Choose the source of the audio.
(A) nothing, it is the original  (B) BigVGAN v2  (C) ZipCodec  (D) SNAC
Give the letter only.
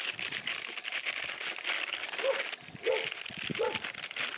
A